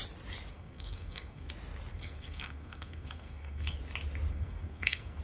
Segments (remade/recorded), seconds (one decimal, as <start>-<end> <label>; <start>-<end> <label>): 0.0-0.5 recorded; 0.5-1.5 remade; 1.5-1.9 recorded; 1.9-3.8 remade; 3.8-4.3 recorded; 4.3-5.2 remade